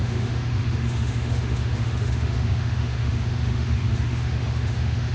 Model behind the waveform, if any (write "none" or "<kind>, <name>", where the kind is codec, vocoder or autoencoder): autoencoder, DAC-VAE